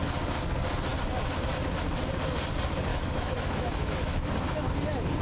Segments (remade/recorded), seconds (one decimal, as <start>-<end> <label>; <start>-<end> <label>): 0.0-2.9 recorded; 2.9-4.7 remade; 4.7-5.2 recorded